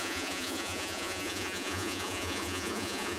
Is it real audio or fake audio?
fake